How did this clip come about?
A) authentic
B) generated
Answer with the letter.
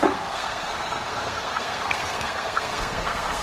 B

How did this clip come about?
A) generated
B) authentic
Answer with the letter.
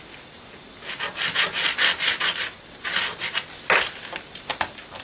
B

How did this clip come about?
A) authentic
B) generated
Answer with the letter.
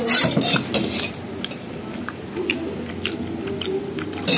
A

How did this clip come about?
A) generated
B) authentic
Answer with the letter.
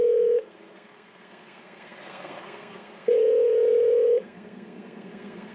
A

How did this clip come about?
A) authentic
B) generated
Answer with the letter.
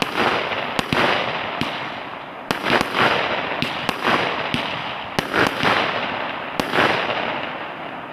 A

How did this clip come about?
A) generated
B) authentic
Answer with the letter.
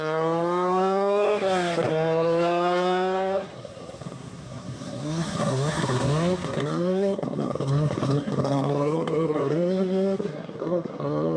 A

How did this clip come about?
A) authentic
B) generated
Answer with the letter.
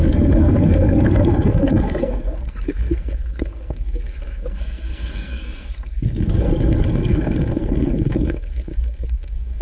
B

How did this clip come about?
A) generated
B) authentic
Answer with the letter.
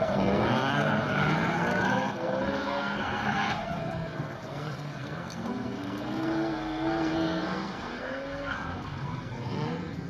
A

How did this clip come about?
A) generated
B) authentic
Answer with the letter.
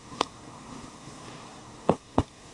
A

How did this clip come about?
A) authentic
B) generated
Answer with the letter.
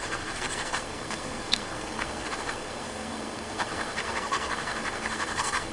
B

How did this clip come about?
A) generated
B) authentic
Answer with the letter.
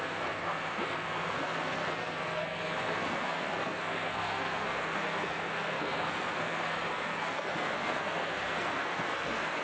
A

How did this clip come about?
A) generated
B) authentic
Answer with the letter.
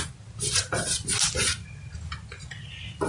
B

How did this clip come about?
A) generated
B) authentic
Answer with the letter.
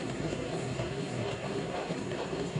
A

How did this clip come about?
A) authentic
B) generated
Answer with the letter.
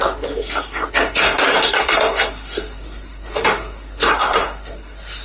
B